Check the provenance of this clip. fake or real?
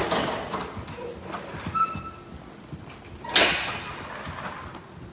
real